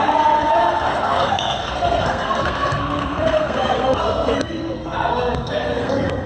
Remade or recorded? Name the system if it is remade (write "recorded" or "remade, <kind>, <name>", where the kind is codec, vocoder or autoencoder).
remade, codec, SNAC